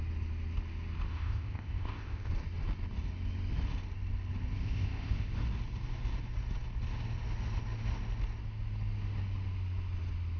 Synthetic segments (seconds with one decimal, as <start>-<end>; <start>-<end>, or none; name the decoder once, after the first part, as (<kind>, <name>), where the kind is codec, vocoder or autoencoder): 1.1-2.3 (codec, ZipCodec); 4.6-5.3